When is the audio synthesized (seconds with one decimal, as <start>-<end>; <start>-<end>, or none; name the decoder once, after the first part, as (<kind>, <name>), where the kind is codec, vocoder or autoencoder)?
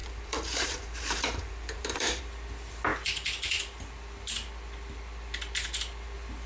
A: 0.0-2.2 (vocoder, BigVGAN v2)